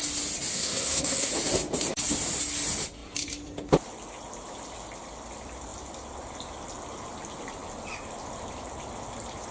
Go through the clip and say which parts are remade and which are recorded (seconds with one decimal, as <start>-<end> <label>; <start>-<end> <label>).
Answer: 0.0-0.5 recorded; 0.5-1.3 remade; 1.3-9.5 recorded